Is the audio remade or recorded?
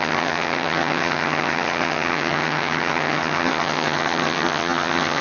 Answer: remade